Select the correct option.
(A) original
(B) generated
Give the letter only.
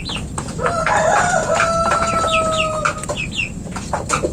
A